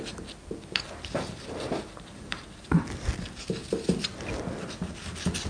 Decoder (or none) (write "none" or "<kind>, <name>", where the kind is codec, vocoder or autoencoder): none